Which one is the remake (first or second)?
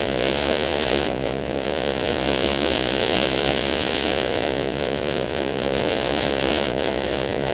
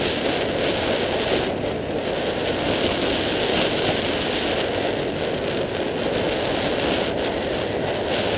first